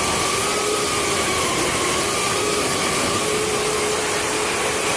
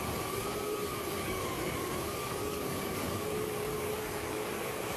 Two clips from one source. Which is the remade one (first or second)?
second